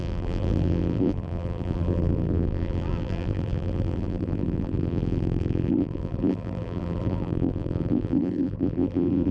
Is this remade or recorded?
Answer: remade